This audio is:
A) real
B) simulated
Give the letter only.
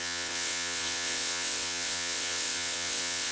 B